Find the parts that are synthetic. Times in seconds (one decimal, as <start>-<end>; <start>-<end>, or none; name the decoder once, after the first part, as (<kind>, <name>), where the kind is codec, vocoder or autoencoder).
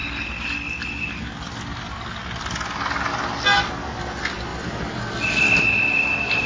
none